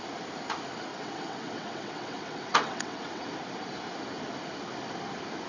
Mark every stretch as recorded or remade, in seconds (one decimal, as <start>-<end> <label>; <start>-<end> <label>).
0.0-0.9 recorded; 0.9-3.3 remade; 3.3-5.5 recorded